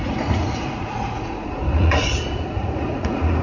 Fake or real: fake